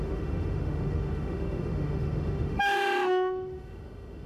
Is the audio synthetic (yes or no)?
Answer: yes